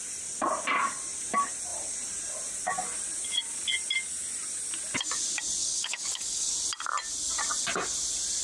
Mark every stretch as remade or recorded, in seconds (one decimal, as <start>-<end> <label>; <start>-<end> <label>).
0.0-5.6 recorded; 5.6-6.5 remade; 6.5-8.4 recorded

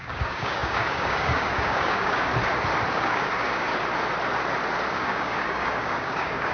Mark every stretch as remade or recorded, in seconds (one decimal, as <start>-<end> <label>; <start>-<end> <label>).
0.0-2.3 remade; 2.3-2.9 recorded; 2.9-3.7 remade; 3.7-4.9 recorded; 4.9-6.5 remade

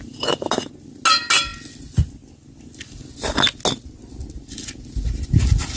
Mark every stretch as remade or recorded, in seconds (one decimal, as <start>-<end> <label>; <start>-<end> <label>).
0.0-5.8 recorded

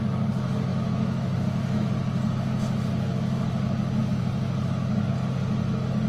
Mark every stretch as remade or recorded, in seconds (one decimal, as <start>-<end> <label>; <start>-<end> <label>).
0.0-0.7 recorded; 0.7-1.9 remade; 1.9-6.1 recorded